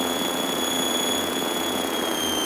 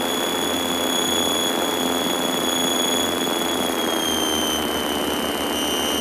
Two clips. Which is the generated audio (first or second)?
first